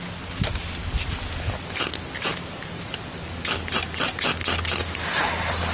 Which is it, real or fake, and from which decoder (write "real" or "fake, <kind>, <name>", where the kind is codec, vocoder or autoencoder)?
real